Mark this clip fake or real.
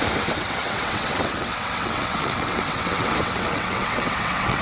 fake